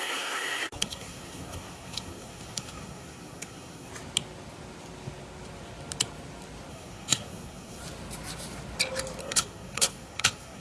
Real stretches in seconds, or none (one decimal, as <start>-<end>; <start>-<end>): 3.9-6.7; 7.8-9.2

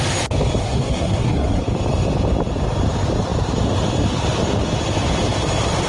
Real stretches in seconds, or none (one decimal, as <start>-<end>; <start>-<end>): 0.0-0.6; 1.6-5.9